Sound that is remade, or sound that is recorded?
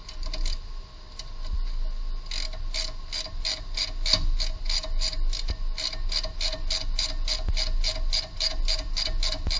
recorded